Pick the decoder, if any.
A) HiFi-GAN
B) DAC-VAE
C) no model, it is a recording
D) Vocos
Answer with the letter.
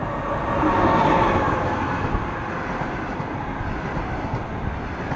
C